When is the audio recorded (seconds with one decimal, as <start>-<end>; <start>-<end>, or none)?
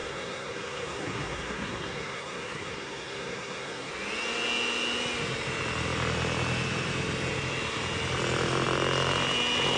3.9-9.8